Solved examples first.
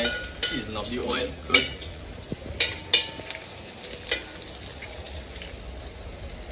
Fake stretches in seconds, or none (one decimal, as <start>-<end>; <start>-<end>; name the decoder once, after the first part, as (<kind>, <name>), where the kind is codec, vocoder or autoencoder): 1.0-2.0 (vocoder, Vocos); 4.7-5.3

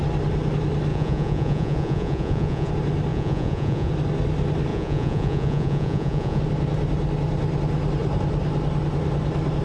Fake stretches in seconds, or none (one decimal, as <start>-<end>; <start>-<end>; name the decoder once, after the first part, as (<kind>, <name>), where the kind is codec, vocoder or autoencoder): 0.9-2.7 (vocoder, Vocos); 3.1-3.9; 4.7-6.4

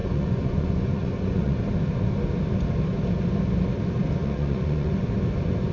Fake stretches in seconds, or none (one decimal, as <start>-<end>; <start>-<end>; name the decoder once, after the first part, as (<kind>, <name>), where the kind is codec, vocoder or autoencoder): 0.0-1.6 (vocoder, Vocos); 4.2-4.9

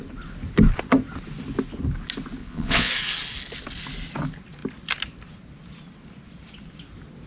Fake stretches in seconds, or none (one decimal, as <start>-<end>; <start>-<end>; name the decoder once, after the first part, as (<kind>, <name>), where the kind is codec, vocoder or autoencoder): 2.4-2.9 (vocoder, Vocos)